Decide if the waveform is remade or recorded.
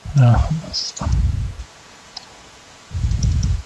remade